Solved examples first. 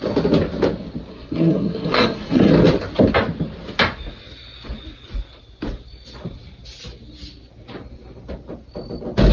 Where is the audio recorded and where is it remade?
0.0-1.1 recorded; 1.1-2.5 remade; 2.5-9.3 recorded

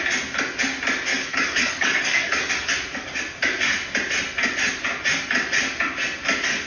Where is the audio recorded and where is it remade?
0.0-1.1 recorded; 1.1-2.5 remade; 2.5-6.7 recorded

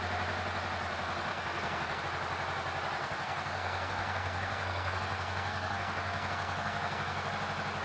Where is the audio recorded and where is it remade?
0.0-1.3 recorded; 1.3-2.0 remade; 2.0-3.0 recorded; 3.0-7.3 remade; 7.3-7.8 recorded

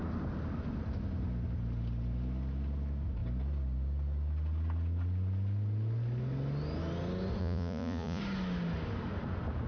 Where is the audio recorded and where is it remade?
0.0-7.4 recorded; 7.4-8.2 remade; 8.2-9.7 recorded

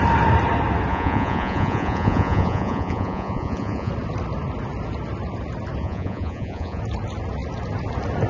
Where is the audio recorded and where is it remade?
0.0-0.9 recorded; 0.9-3.9 remade; 3.9-5.8 recorded; 5.8-6.8 remade; 6.8-8.3 recorded